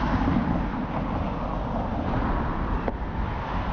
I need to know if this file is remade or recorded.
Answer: recorded